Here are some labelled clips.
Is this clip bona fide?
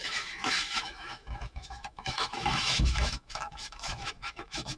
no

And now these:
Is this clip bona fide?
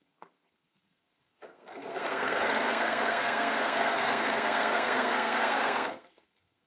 no